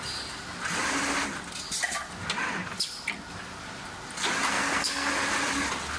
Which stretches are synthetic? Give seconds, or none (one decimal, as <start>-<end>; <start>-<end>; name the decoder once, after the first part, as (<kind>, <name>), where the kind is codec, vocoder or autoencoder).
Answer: 4.5-5.1 (codec, SNAC)